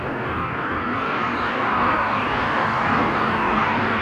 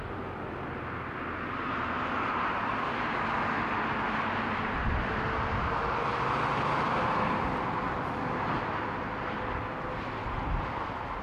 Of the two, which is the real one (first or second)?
second